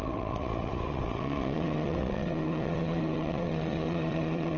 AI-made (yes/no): yes